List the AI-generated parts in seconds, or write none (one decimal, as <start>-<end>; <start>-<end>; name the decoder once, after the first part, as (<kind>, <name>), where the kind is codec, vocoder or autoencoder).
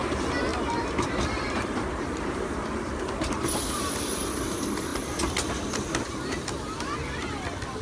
0.5-3.0 (vocoder, BigVGAN v2); 4.9-5.7